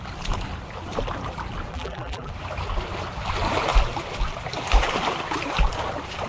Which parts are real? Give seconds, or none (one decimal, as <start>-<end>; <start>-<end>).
0.0-1.7; 2.3-6.3